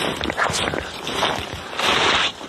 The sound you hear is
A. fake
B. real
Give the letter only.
B